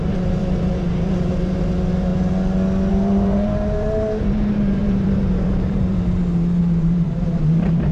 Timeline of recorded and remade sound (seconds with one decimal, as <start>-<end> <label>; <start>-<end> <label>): 0.0-2.1 remade; 2.1-2.9 recorded; 2.9-7.9 remade